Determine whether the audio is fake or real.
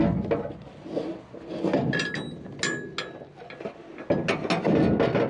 real